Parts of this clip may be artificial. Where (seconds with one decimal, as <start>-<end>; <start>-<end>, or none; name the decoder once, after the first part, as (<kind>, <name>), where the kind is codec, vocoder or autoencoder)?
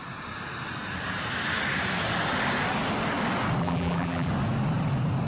3.6-4.3 (vocoder, BigVGAN v2)